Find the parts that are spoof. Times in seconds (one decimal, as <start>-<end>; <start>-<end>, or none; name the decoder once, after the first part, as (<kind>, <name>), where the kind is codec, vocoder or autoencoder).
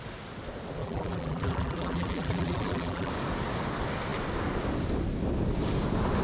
0.8-3.1 (vocoder, BigVGAN v2)